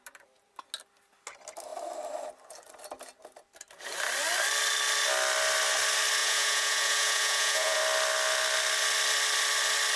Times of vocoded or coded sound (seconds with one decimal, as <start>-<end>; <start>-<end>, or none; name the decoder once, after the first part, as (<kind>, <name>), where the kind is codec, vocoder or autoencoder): 6.2-7.8 (vocoder, Vocos)